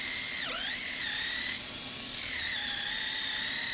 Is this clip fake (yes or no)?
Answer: no